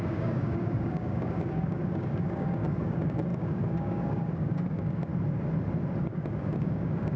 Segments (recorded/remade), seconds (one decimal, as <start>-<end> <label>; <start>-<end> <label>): 0.0-5.1 remade; 5.1-6.0 recorded; 6.0-7.2 remade